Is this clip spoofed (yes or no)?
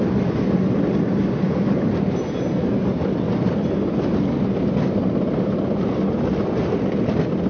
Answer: no